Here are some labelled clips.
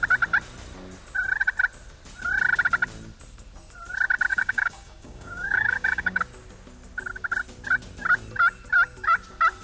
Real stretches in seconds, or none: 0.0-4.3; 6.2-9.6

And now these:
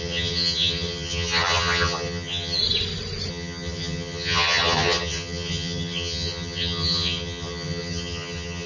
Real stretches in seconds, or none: 2.6-3.3

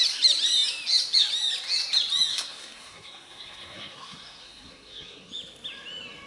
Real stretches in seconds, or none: 0.0-2.3; 5.3-6.3

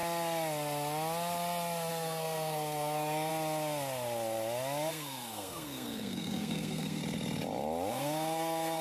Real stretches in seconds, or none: 0.0-1.9; 3.3-4.9; 7.0-7.9

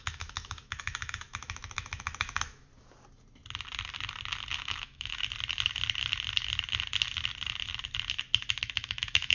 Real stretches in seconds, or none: 2.7-4.6; 5.1-8.6

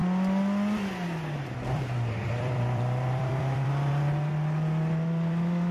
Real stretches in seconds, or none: 0.0-1.4